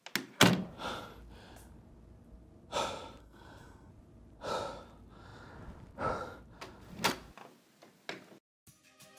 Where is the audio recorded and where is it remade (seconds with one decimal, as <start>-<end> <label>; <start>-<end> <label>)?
0.0-3.2 recorded; 3.2-3.9 remade; 3.9-9.2 recorded